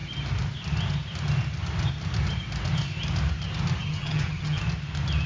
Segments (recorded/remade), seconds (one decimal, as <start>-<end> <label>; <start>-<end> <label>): 0.0-3.8 recorded; 3.8-4.6 remade; 4.6-5.3 recorded